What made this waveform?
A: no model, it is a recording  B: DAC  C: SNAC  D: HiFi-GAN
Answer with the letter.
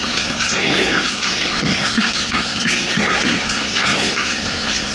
C